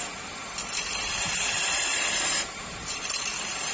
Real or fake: fake